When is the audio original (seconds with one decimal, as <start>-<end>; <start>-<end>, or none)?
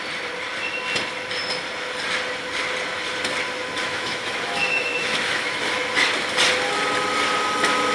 0.0-3.8; 5.6-7.9